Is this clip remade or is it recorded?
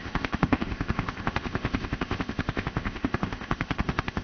remade